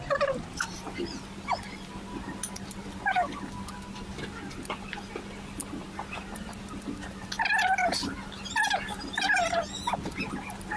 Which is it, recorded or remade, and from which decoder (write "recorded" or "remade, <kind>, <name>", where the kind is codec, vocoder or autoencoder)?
recorded